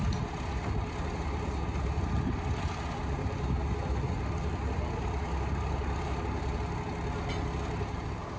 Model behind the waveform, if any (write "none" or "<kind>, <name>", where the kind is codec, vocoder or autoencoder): none